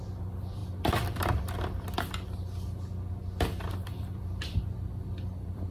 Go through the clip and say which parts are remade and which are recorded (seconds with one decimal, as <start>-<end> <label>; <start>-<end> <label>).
0.0-0.6 remade; 0.6-3.7 recorded; 3.7-5.7 remade